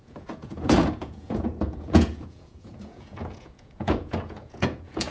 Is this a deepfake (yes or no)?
yes